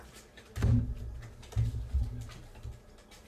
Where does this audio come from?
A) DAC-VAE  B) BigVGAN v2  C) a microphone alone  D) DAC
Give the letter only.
C